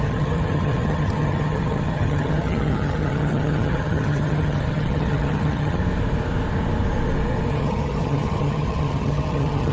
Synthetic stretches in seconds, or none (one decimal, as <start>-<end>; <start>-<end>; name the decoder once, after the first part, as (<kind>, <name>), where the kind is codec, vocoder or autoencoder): 0.0-5.8 (vocoder, HiFi-GAN); 7.5-9.7